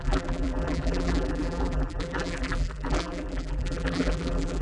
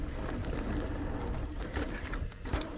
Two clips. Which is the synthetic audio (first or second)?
first